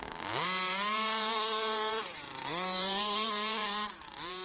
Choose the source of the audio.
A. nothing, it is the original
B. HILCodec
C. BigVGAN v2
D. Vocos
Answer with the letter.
C